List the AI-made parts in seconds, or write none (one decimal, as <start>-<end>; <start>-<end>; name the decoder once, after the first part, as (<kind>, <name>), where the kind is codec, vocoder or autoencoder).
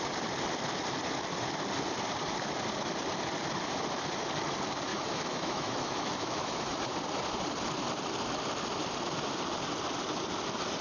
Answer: 4.9-6.7 (autoencoder, DAC-VAE)